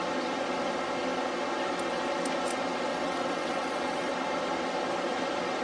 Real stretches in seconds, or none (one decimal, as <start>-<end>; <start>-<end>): 0.0-2.9; 4.1-5.6